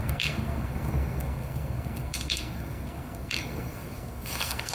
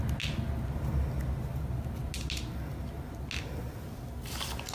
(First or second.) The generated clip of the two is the first